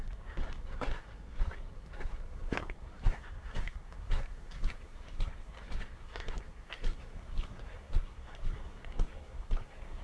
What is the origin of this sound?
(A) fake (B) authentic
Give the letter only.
A